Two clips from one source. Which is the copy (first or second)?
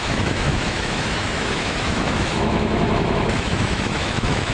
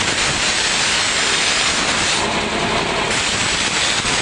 first